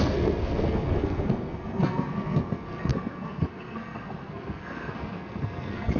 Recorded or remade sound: remade